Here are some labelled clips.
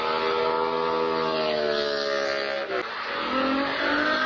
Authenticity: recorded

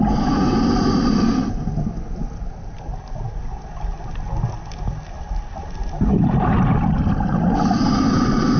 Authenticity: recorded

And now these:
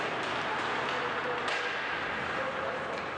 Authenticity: recorded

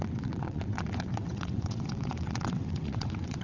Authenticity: remade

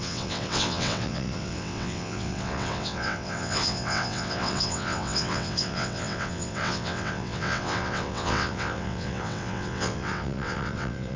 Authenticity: remade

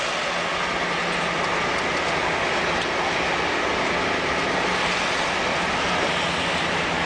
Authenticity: recorded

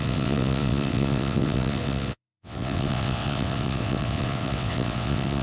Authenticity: remade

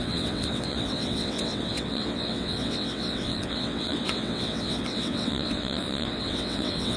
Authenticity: remade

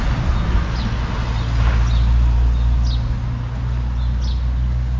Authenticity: recorded